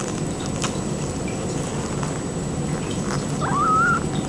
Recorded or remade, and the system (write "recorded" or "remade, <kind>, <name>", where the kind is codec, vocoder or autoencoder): recorded